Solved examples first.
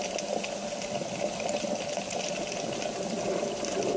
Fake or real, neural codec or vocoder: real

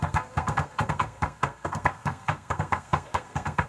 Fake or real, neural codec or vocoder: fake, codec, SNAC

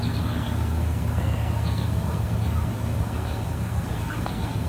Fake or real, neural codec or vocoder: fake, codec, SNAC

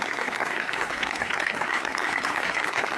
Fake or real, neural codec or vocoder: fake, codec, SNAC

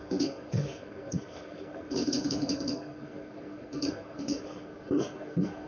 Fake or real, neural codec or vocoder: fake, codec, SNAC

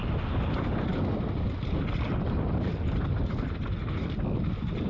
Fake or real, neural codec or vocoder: real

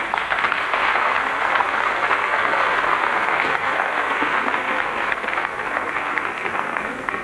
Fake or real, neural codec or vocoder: fake, codec, SNAC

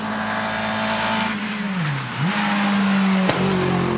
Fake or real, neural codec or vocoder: real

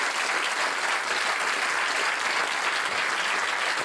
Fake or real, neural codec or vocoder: real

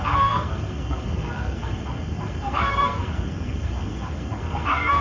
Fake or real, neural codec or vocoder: fake, codec, SNAC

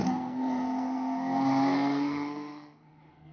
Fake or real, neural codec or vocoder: fake, codec, SNAC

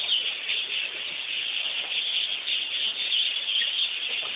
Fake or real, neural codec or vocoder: real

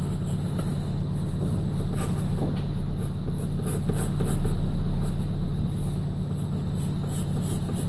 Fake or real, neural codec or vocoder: real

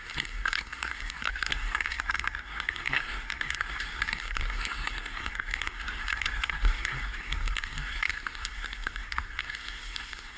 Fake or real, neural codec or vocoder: fake, codec, SNAC